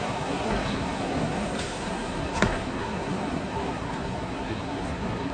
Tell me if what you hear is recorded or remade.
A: remade